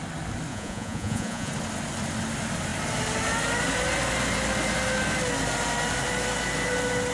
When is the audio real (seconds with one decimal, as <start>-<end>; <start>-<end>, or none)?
0.0-0.5; 1.5-7.1